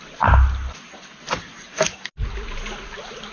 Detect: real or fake real